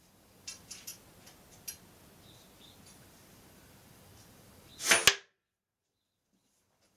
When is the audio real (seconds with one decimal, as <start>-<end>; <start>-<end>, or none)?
0.9-3.0; 4.7-5.8